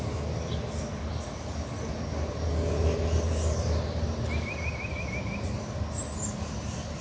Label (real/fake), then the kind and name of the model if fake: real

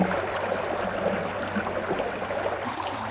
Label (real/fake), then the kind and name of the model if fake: real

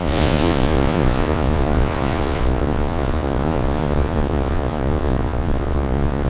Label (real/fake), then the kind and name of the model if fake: fake, vocoder, Vocos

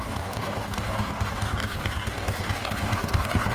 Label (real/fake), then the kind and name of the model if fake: fake, codec, DAC